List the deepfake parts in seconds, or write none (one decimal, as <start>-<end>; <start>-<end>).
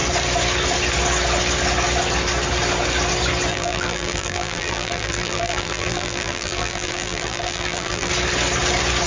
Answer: 3.5-8.1